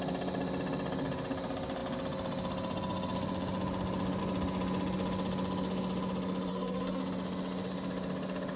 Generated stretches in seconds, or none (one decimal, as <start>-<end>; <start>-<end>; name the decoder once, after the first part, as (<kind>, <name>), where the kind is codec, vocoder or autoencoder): 6.5-7.0 (codec, SNAC)